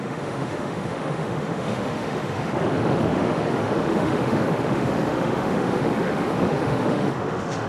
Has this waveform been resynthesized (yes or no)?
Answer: yes